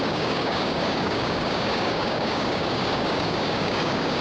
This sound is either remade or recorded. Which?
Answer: remade